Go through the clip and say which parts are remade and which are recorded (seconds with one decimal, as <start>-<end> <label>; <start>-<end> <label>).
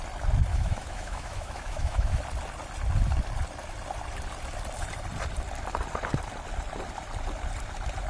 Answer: 0.0-0.5 recorded; 0.5-2.2 remade; 2.2-8.1 recorded